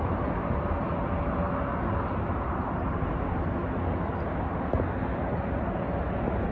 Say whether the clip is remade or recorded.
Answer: recorded